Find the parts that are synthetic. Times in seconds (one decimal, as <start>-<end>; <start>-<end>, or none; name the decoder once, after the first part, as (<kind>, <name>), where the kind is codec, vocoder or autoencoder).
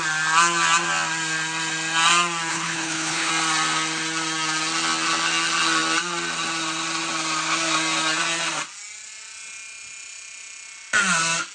2.5-3.3 (codec, HILCodec)